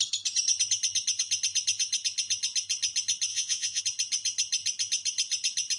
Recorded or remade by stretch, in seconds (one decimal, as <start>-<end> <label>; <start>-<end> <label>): 0.0-3.3 recorded; 3.3-3.8 remade; 3.8-5.8 recorded